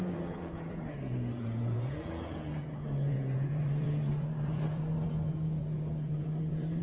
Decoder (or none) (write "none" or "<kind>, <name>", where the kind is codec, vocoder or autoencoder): vocoder, Vocos